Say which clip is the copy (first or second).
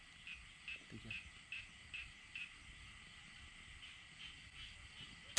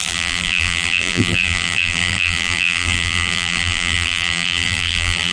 second